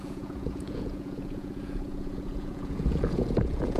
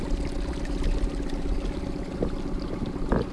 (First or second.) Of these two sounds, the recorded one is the second